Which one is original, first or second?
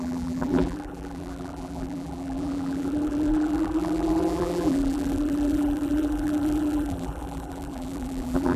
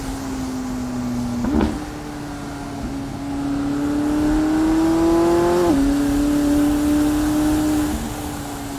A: second